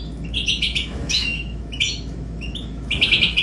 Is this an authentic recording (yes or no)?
no